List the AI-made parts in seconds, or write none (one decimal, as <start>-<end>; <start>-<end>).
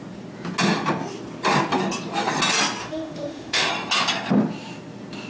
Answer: 2.8-3.7